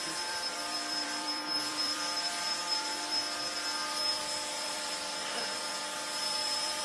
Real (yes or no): no